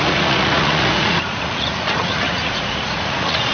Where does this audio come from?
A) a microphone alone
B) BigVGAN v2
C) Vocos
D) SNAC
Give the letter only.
C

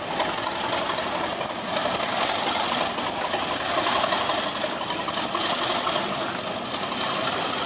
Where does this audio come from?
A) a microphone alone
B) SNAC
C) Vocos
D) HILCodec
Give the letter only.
A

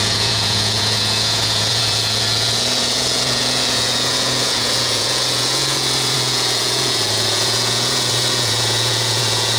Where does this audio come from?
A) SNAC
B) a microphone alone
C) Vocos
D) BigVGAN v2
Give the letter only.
C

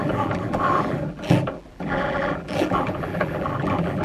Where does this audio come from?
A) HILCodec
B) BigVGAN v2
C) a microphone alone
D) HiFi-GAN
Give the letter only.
B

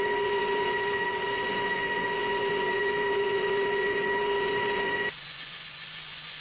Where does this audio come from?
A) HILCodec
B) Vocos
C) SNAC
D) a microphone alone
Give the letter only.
B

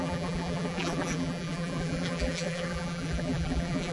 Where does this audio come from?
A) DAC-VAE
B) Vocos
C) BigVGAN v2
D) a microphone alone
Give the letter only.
C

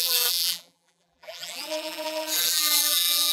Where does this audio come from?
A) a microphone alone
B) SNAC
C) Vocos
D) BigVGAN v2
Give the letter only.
D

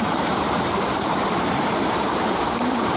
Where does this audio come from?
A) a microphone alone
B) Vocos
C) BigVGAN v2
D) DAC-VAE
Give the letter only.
C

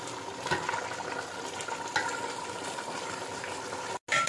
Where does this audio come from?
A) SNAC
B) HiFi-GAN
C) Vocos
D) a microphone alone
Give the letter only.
D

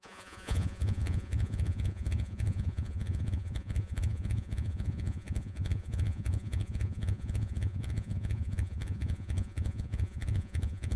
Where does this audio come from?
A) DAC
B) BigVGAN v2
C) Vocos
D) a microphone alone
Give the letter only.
C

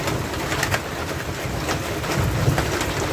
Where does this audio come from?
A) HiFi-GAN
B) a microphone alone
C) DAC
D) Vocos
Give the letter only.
B